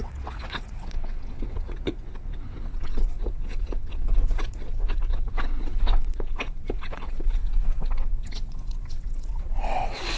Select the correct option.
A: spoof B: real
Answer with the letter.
A